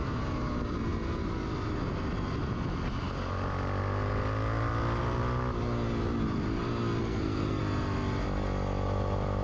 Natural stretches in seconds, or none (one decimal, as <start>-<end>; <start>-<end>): 0.0-7.0; 7.6-9.4